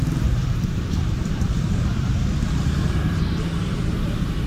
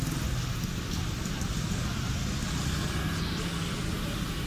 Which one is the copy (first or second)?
first